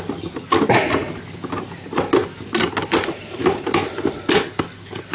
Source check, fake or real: real